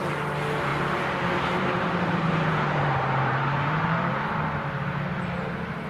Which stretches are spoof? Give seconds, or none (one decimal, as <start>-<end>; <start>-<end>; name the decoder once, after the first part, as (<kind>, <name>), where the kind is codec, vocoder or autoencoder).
0.7-4.2 (vocoder, BigVGAN v2)